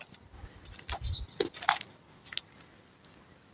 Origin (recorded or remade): recorded